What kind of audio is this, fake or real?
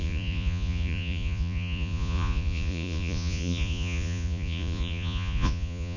fake